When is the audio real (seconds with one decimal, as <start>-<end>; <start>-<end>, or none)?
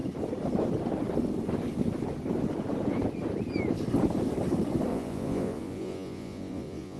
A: 0.0-4.9